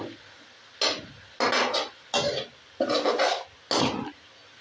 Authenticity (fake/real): real